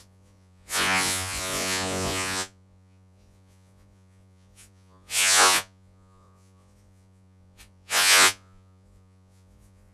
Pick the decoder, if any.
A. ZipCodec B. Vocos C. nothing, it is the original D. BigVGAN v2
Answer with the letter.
B